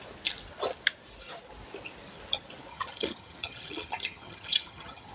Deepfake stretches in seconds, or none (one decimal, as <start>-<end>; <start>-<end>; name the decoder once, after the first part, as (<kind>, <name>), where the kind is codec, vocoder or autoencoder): 2.7-5.1 (vocoder, HiFi-GAN)